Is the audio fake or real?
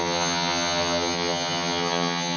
fake